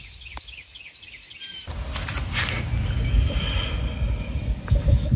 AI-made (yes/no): no